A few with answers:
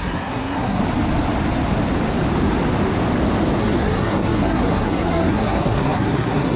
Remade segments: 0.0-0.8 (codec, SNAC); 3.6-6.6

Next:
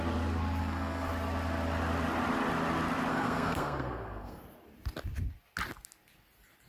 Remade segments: 0.6-1.1 (codec, SNAC); 3.1-4.4

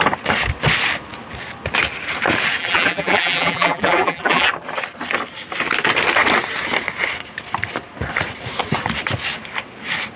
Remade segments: 2.6-4.5 (vocoder, BigVGAN v2)

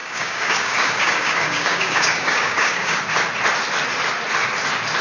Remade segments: 0.0-3.0 (codec, DAC)

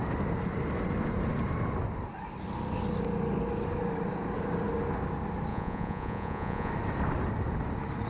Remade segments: 5.5-6.7 (vocoder, Vocos)

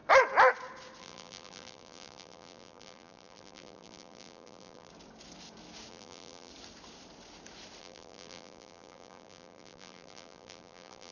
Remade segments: 1.0-4.9 (vocoder, BigVGAN v2); 5.9-6.5; 7.8-11.1